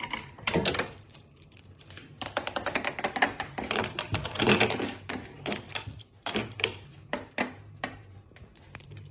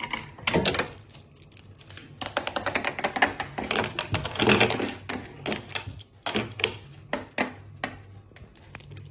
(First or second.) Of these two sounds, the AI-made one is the first